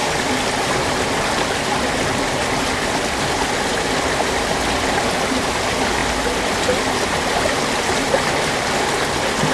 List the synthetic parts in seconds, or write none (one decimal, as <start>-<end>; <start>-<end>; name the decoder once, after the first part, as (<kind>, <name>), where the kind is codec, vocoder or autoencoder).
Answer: none